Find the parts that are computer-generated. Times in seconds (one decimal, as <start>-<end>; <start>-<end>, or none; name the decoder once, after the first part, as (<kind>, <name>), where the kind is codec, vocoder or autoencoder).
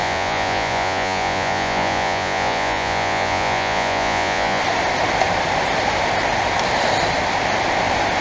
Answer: 0.0-4.6 (vocoder, Vocos)